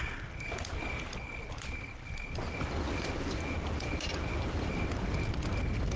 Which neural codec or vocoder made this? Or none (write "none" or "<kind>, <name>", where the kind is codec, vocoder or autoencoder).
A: none